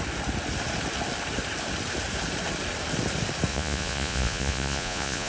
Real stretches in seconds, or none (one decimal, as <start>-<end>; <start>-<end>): 0.0-3.5